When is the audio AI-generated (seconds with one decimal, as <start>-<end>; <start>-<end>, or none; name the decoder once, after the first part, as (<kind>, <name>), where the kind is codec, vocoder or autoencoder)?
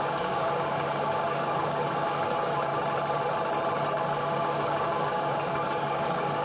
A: 0.0-2.7 (codec, DAC); 3.9-6.4